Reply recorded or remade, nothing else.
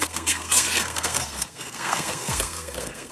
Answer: remade